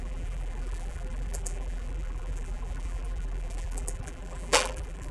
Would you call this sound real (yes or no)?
no